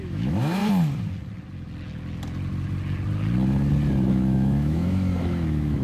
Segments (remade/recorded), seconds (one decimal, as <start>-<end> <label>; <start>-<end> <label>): 0.0-0.6 remade; 0.6-4.1 recorded; 4.1-5.8 remade